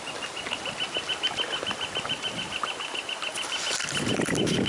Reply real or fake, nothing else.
real